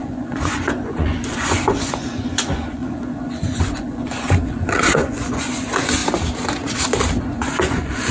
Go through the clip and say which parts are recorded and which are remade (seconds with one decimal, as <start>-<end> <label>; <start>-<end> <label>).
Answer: 0.0-6.0 remade; 6.0-7.2 recorded; 7.2-8.1 remade